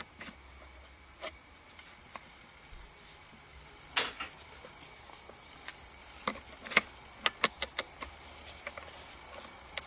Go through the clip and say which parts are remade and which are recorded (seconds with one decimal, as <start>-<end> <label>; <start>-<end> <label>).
0.0-9.9 recorded